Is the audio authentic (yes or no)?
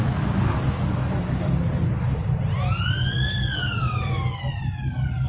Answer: no